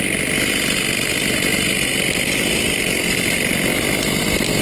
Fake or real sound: real